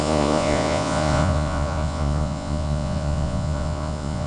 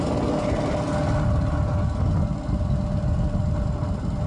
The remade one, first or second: first